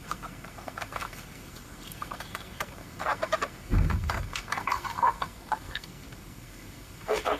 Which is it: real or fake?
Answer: fake